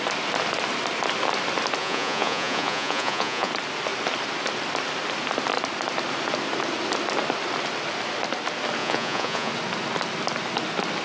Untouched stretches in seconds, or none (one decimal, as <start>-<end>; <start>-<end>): 0.0-1.8; 3.5-8.8; 9.5-11.0